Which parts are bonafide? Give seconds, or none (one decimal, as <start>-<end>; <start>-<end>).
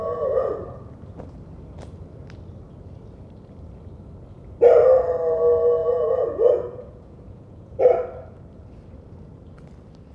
0.0-5.8; 7.8-10.1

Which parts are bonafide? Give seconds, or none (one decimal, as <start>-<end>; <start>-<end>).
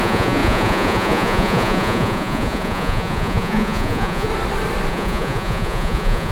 4.3-4.9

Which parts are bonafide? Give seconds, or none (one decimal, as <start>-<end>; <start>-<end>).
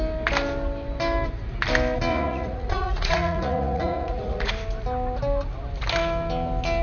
0.0-2.1; 4.5-6.8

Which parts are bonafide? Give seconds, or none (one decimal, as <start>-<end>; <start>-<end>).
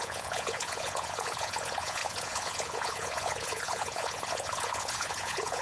none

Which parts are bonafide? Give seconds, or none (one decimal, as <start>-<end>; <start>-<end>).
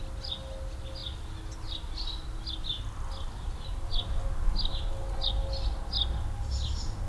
0.0-7.1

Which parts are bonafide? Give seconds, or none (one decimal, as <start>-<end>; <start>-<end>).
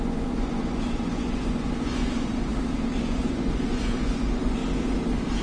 2.5-3.0; 4.6-5.4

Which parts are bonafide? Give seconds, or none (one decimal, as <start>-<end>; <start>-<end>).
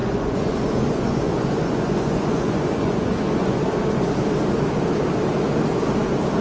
3.6-6.4